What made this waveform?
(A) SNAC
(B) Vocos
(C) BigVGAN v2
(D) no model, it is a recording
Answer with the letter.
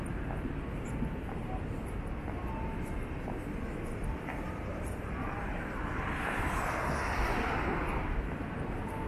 D